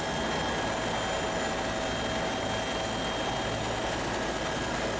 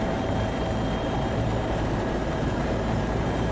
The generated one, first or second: second